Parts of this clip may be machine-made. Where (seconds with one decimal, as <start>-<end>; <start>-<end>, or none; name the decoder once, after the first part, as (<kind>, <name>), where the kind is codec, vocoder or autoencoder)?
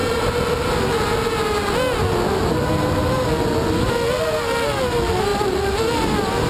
none